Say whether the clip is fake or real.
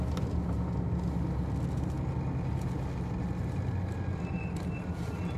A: real